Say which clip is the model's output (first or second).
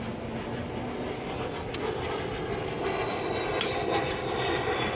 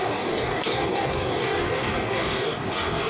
second